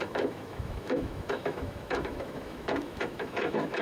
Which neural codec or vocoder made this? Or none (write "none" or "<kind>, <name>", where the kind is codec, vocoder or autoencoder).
autoencoder, DAC-VAE